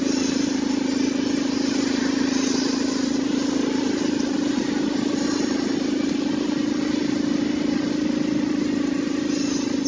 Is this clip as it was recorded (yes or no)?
yes